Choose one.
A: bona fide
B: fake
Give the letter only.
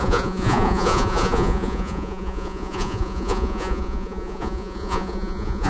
B